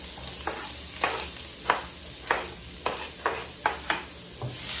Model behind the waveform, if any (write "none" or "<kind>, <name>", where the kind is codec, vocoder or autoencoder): none